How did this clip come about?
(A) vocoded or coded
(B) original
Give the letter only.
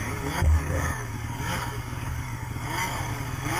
A